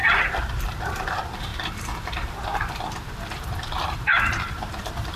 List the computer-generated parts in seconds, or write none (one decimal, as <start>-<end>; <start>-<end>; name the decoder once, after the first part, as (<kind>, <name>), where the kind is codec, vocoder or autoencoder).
0.0-0.9 (vocoder, BigVGAN v2); 1.5-4.6